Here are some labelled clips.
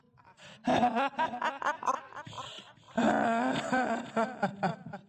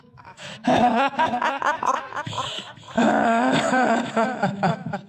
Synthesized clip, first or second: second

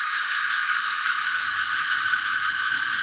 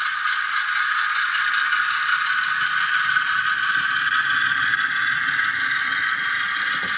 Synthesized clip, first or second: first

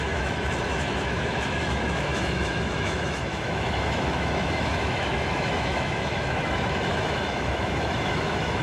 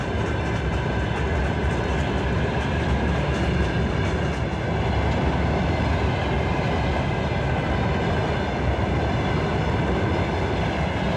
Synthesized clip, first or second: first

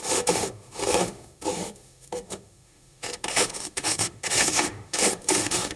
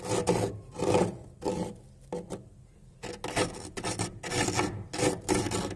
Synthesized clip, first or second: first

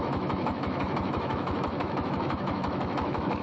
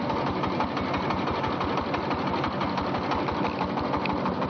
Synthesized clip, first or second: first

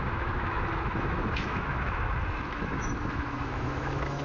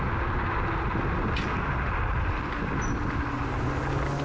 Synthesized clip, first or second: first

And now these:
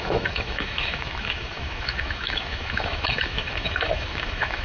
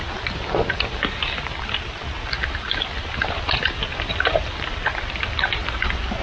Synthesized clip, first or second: first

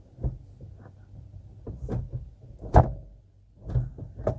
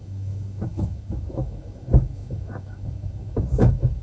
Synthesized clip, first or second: second